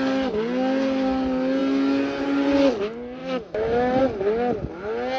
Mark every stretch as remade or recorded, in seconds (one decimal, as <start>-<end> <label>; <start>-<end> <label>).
0.0-3.2 recorded; 3.2-4.0 remade; 4.0-5.2 recorded